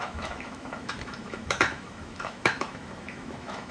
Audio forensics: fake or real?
fake